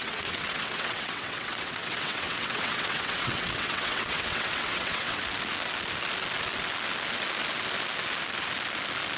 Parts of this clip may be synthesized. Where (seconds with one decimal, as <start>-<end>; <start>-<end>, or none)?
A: 0.0-5.2